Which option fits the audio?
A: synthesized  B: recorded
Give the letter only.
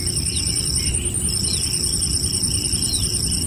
B